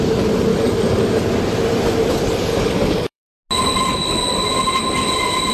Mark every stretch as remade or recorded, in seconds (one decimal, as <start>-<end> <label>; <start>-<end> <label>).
0.0-0.5 recorded; 0.5-1.2 remade; 1.2-2.5 recorded; 2.5-3.3 remade; 3.3-5.5 recorded